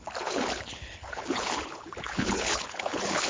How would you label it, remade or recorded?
remade